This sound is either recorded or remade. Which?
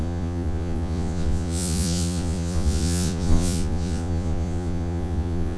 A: remade